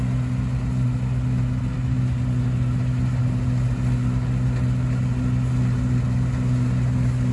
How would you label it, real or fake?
real